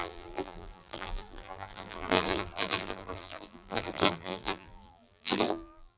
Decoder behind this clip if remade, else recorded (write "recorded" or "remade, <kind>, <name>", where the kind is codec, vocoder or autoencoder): remade, vocoder, BigVGAN v2